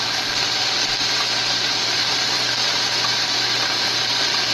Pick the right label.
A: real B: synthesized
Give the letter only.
A